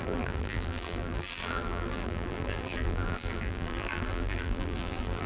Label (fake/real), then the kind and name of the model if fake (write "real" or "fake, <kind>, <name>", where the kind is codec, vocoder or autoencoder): fake, vocoder, BigVGAN v2